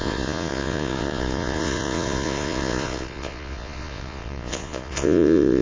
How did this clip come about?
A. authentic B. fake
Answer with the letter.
B